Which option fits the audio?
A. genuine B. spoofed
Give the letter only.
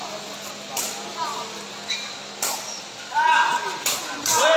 A